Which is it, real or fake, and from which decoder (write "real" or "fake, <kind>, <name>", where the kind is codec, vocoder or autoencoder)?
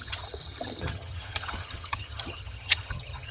fake, vocoder, HiFi-GAN